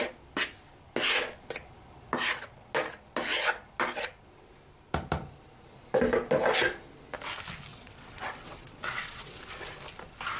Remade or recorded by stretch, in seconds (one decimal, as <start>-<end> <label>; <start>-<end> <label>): 0.0-7.7 recorded; 7.7-9.4 remade; 9.4-10.4 recorded